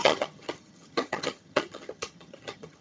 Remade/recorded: remade